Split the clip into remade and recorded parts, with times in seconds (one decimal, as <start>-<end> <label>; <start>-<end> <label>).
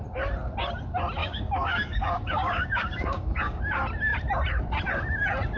0.0-1.2 recorded; 1.2-3.6 remade; 3.6-5.6 recorded